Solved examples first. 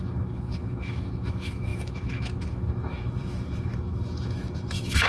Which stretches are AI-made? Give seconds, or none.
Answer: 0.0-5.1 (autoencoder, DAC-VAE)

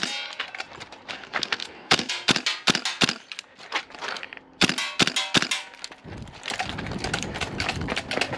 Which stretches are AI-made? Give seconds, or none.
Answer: 1.1-2.1 (codec, SNAC)

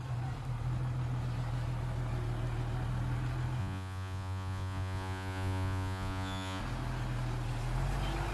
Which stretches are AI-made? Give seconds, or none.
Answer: 3.6-6.6 (vocoder, Vocos)

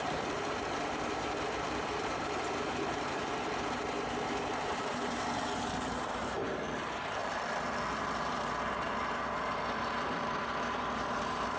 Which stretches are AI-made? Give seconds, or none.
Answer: 0.0-7.2 (vocoder, BigVGAN v2); 8.7-11.6